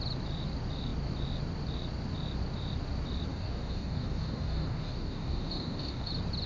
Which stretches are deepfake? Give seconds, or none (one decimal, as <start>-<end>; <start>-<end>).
3.3-6.1